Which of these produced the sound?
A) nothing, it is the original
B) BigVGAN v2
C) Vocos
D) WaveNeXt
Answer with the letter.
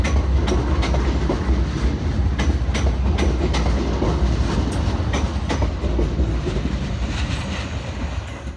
A